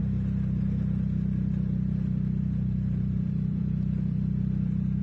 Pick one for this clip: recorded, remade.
remade